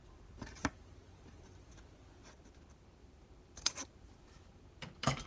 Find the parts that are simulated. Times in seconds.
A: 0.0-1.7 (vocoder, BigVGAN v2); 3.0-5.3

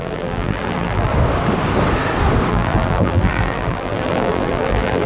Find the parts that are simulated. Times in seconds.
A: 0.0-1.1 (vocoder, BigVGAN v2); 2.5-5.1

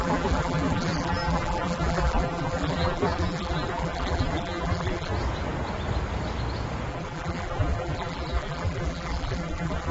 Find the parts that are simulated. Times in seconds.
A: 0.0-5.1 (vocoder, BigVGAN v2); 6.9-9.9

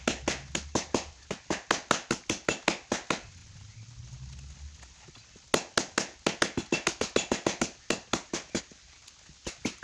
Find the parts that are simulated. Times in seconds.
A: none